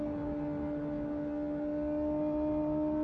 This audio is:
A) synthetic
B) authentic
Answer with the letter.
B